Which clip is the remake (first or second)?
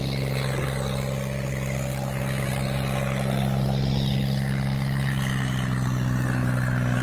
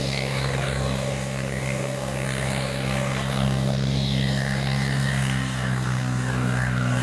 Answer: second